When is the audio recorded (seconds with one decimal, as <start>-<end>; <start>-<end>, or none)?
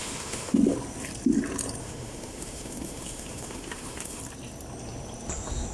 0.6-1.8; 4.2-5.7